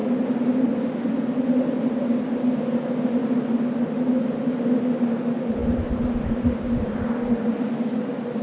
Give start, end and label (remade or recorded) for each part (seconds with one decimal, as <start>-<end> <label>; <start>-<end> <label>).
0.0-5.6 recorded; 5.6-7.0 remade; 7.0-8.4 recorded